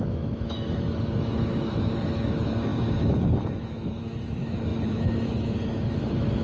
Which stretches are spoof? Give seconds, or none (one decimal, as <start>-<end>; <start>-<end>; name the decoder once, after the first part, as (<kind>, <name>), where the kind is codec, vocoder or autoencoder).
0.0-6.4 (autoencoder, DAC-VAE)